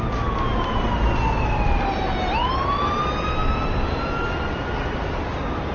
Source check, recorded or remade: recorded